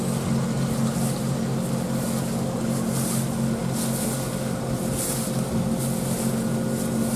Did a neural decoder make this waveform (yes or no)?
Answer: no